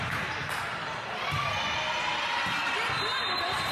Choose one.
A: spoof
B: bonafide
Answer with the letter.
B